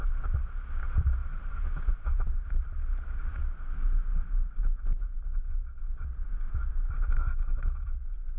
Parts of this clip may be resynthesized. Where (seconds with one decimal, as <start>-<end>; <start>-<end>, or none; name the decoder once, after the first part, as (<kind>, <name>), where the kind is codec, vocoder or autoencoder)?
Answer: none